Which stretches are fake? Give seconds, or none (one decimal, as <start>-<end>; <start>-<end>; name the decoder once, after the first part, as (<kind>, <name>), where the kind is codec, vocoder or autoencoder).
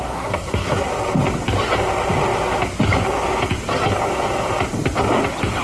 0.0-0.9 (codec, SNAC)